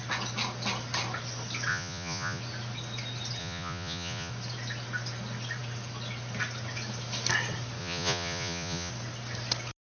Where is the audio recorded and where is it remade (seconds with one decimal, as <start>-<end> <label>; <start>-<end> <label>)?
0.0-1.7 recorded; 1.7-2.4 remade; 2.4-3.4 recorded; 3.4-4.3 remade; 4.3-7.8 recorded; 7.8-8.9 remade; 8.9-10.0 recorded